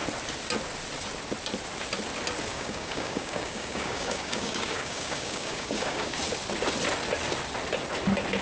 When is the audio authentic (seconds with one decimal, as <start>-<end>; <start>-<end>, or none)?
0.0-2.5; 6.2-8.4